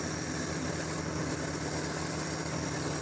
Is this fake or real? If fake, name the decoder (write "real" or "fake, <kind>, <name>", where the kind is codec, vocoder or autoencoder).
real